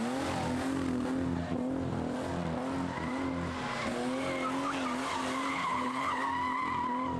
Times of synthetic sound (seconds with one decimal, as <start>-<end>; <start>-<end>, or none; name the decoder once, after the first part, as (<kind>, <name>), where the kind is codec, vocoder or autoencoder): 5.5-6.2 (codec, HILCodec)